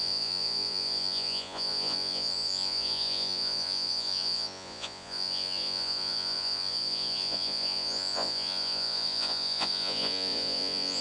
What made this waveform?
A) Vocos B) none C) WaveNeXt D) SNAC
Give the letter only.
A